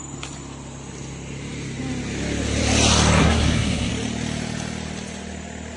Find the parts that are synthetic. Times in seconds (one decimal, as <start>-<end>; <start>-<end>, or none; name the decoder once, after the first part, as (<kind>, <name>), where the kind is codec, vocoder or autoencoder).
3.2-3.9 (codec, SNAC)